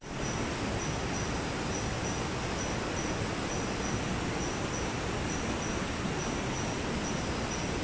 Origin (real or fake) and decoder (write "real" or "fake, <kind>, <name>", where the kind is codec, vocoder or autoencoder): real